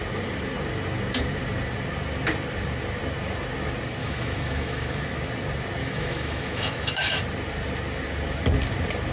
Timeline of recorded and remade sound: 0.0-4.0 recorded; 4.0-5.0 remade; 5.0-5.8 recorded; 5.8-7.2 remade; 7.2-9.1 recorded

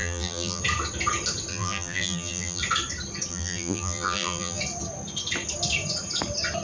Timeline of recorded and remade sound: 0.0-0.6 remade; 0.6-1.5 recorded; 1.5-2.6 remade; 2.6-3.3 recorded; 3.3-4.6 remade; 4.6-6.6 recorded